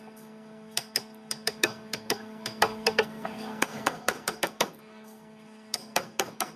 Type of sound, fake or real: fake